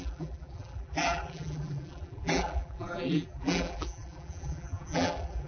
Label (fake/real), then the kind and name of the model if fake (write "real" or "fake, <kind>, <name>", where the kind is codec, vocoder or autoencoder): fake, vocoder, BigVGAN v2